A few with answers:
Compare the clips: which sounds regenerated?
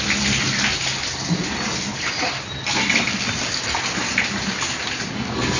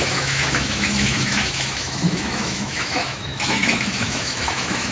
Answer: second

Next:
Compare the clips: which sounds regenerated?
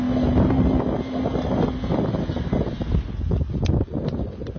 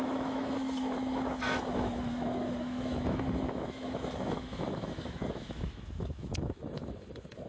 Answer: second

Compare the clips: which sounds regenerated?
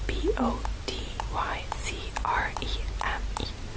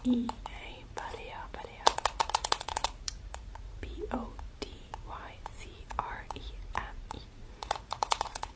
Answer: second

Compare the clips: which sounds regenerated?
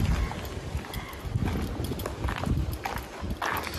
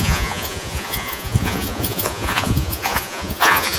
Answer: second